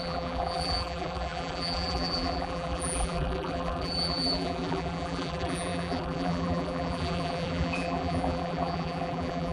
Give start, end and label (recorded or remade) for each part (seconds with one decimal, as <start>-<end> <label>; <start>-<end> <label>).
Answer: 0.0-9.5 remade